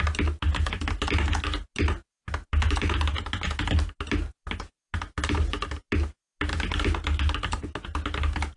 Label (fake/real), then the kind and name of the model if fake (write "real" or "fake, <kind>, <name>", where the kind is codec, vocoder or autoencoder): real